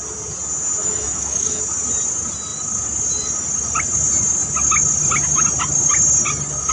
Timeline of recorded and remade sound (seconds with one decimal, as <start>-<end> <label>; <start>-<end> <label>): 0.0-0.8 recorded; 0.8-1.6 remade; 1.6-6.7 recorded